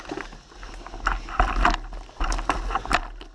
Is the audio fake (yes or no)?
no